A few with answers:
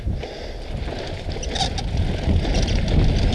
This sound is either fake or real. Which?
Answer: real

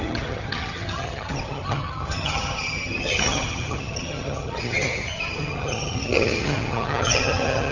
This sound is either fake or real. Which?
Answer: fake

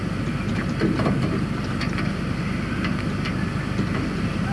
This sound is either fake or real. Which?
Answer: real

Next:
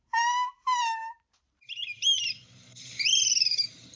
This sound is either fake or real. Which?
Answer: fake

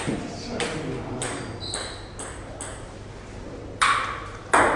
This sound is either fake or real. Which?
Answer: real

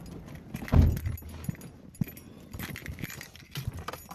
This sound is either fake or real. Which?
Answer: real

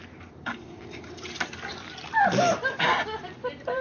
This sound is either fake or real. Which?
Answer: fake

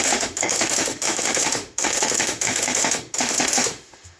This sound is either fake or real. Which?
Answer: fake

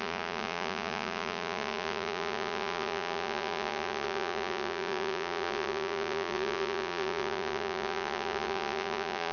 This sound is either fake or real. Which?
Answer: fake